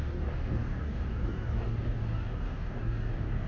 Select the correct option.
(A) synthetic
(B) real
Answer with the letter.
A